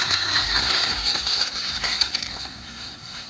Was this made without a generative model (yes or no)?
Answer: no